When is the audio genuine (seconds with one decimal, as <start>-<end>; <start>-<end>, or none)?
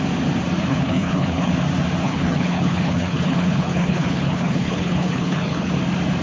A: 0.0-0.7; 1.5-2.0; 5.7-6.2